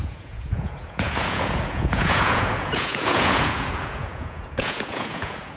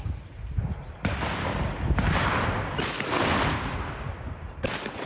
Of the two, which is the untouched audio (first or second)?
second